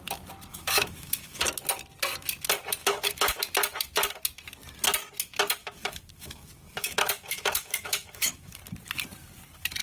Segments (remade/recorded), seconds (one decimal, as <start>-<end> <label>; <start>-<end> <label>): 0.0-0.5 recorded; 0.5-1.4 remade; 1.4-2.8 recorded; 2.8-3.4 remade; 3.4-5.6 recorded; 5.6-8.6 remade; 8.6-9.8 recorded